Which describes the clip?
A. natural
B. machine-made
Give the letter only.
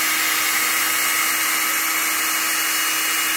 A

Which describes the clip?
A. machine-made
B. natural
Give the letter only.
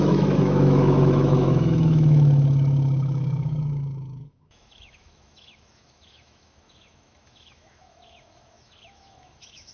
A